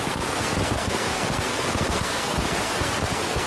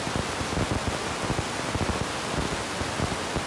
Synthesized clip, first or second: first